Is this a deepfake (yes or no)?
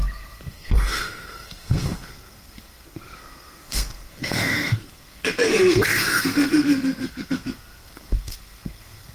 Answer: yes